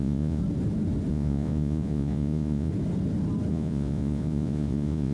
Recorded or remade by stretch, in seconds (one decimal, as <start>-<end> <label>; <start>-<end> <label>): 0.0-0.4 remade; 0.4-1.1 recorded; 1.1-2.7 remade; 2.7-3.5 recorded; 3.5-5.1 remade